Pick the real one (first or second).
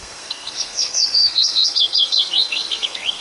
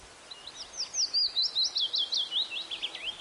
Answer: second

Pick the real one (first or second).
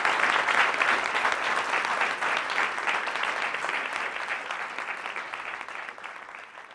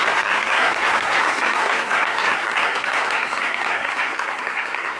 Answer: first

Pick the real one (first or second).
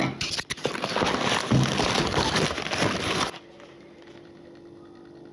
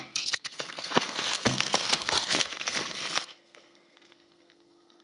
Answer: first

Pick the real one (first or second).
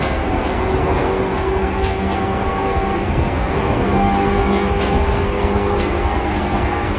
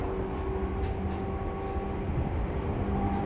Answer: second